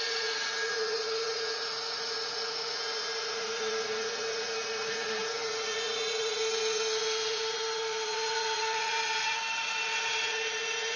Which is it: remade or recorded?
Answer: remade